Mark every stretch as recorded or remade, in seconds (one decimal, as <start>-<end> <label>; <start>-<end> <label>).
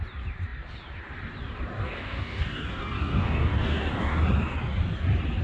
0.0-1.8 recorded; 1.8-4.2 remade; 4.2-5.4 recorded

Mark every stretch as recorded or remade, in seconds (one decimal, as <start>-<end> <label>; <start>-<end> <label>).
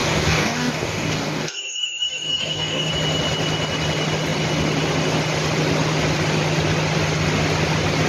0.0-2.9 remade; 2.9-8.1 recorded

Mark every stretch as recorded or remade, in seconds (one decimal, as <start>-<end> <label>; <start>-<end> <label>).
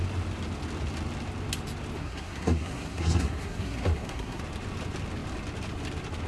0.0-2.0 recorded; 2.0-4.4 remade; 4.4-6.3 recorded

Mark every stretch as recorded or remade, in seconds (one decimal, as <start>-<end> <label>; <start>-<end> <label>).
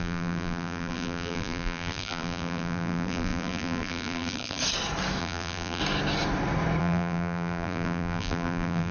0.0-4.6 remade; 4.6-5.2 recorded; 5.2-5.8 remade; 5.8-6.8 recorded; 6.8-8.9 remade